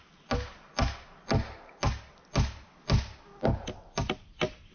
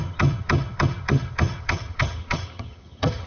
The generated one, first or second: second